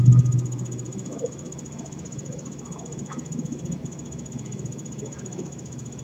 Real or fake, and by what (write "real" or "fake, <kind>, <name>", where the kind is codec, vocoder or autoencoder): fake, autoencoder, DAC-VAE